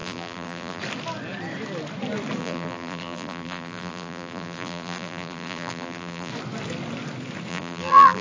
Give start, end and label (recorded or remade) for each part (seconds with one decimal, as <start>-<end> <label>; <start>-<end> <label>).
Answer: 0.0-0.8 remade; 0.8-2.4 recorded; 2.4-6.3 remade; 6.3-7.5 recorded; 7.5-8.2 remade